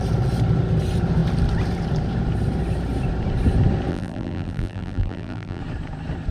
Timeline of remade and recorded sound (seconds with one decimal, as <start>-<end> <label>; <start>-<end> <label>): 0.0-3.9 recorded; 3.9-5.6 remade; 5.6-6.3 recorded

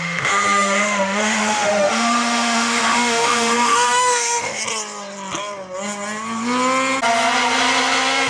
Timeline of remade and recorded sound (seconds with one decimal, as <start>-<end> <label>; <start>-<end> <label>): 0.0-4.6 remade; 4.6-8.3 recorded

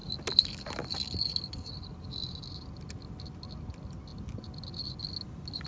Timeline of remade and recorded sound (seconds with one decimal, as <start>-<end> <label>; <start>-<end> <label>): 0.0-5.7 recorded